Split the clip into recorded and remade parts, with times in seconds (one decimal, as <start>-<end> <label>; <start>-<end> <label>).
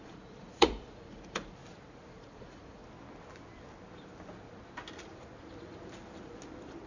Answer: 0.0-1.6 remade; 1.6-2.1 recorded; 2.1-2.8 remade; 2.8-6.9 recorded